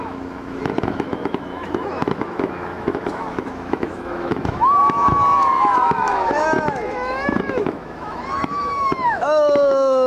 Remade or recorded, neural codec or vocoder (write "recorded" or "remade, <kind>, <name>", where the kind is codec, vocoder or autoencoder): remade, autoencoder, DAC-VAE